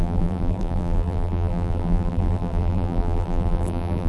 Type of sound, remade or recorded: remade